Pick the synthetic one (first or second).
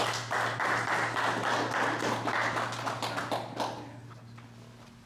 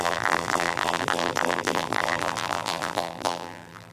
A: second